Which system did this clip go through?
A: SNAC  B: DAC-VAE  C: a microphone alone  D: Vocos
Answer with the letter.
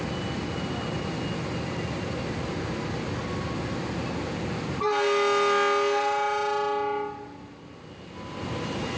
C